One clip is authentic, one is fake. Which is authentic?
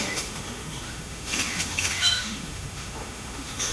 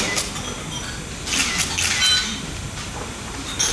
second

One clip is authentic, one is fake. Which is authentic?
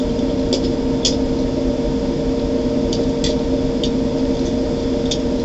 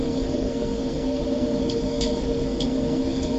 first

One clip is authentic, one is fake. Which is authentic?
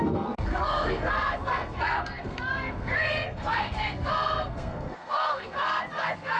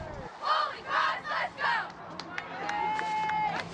second